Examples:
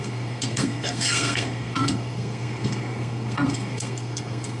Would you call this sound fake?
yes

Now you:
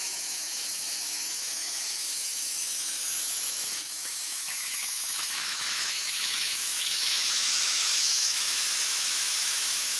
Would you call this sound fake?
yes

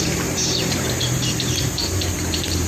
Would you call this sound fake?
yes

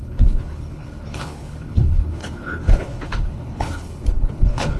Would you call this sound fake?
yes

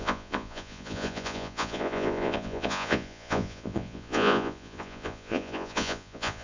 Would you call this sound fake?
yes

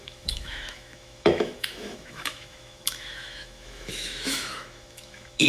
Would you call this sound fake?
yes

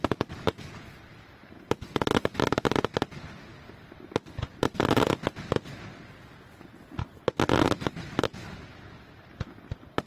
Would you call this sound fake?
no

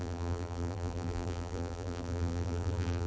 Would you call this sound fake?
yes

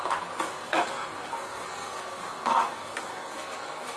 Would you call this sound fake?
yes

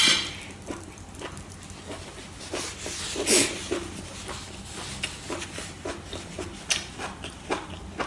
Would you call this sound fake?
no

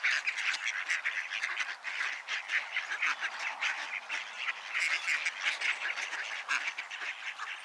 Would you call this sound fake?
no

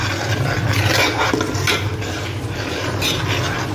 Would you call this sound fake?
no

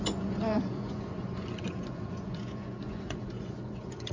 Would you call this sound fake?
yes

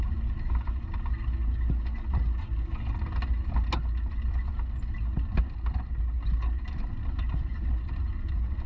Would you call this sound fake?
no